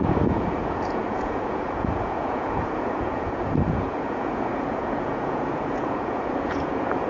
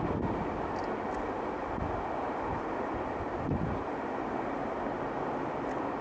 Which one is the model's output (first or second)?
first